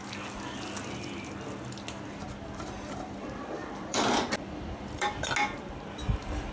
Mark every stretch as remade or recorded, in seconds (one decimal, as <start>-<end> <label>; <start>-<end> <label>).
0.0-3.6 recorded; 3.6-5.2 remade; 5.2-6.5 recorded